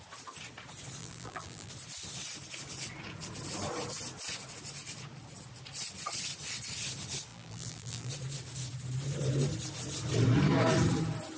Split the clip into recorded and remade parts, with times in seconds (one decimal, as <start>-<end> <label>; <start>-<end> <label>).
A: 0.0-1.0 recorded; 1.0-1.7 remade; 1.7-7.3 recorded; 7.3-8.1 remade; 8.1-11.4 recorded